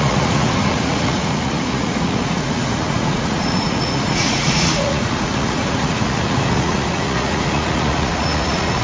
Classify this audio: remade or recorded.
remade